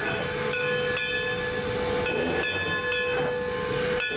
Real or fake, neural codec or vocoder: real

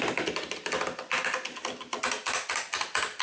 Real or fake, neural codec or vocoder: real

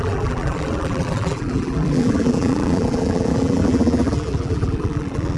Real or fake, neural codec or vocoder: fake, vocoder, BigVGAN v2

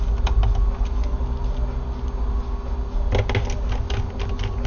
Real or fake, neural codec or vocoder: real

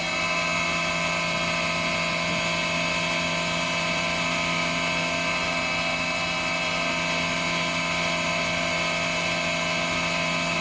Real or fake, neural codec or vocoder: real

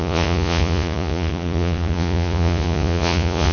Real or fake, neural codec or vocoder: fake, vocoder, Vocos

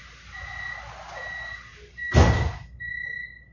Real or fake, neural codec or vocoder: real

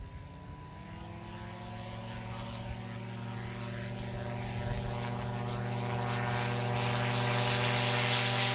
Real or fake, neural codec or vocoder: real